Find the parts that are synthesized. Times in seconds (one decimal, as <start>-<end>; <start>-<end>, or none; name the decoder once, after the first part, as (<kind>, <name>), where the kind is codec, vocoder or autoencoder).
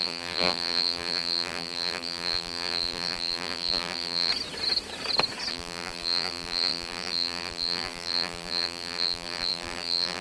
0.0-4.3 (vocoder, BigVGAN v2); 5.5-10.2